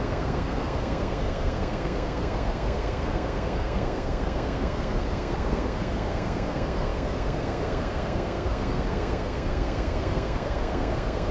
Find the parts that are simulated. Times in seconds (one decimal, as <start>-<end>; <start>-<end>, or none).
0.0-11.3